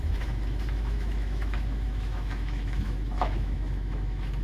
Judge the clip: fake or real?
fake